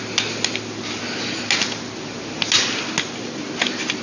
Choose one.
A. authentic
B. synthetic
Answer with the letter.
A